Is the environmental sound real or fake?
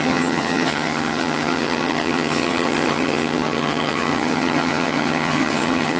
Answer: fake